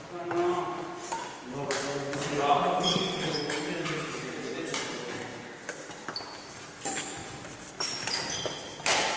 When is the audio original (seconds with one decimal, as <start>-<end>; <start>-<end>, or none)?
0.0-2.9; 3.4-9.2